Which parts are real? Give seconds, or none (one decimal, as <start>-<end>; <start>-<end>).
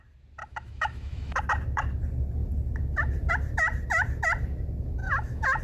0.0-0.4; 1.4-5.0